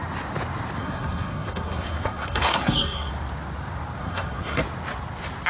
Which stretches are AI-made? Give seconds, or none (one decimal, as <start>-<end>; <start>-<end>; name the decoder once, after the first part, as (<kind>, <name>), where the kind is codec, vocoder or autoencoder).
0.8-3.1 (codec, SNAC); 4.0-4.6